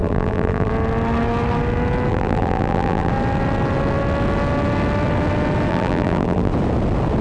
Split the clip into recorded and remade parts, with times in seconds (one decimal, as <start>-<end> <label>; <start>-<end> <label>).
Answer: 0.0-0.7 remade; 0.7-2.1 recorded; 2.1-3.1 remade; 3.1-5.7 recorded; 5.7-6.5 remade; 6.5-7.2 recorded